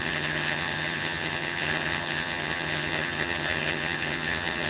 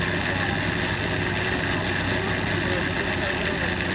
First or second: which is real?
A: second